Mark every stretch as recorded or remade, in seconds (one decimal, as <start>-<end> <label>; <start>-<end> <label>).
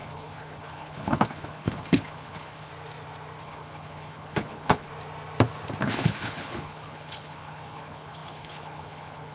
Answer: 0.0-2.7 remade; 2.7-3.4 recorded; 3.4-4.9 remade; 4.9-5.8 recorded; 5.8-9.3 remade